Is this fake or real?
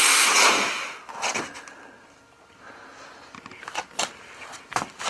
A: real